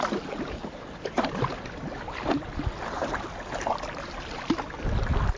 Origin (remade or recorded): recorded